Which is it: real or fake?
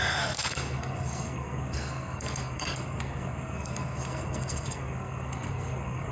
fake